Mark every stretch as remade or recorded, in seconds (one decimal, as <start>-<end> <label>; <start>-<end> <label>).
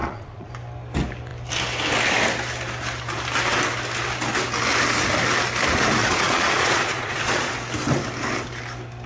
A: 0.0-0.5 remade; 0.5-6.0 recorded; 6.0-7.5 remade; 7.5-9.1 recorded